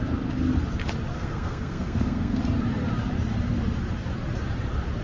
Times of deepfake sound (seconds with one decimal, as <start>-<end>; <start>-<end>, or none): 1.1-2.4